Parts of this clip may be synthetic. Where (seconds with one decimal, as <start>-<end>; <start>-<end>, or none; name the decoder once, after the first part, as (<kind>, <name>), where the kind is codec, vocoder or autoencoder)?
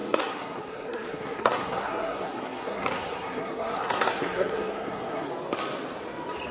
0.0-5.3 (codec, SNAC)